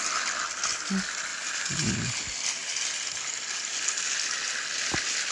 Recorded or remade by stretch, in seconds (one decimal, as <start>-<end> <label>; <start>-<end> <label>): 0.0-1.3 recorded; 1.3-1.9 remade; 1.9-5.3 recorded